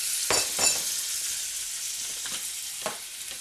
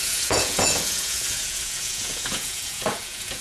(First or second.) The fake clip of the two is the second